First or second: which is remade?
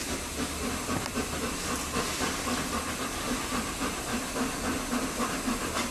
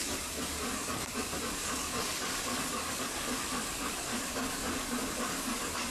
second